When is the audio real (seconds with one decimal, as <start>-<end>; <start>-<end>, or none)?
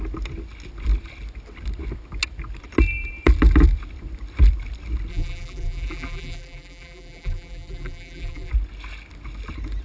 0.0-5.1; 8.5-9.8